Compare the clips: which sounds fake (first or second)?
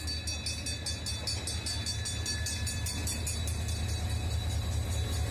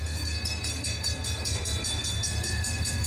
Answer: second